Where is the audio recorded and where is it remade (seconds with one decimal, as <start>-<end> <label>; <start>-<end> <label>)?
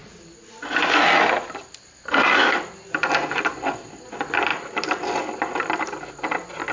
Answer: 0.0-6.7 recorded